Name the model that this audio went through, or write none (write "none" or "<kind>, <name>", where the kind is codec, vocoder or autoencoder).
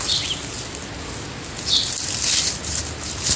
none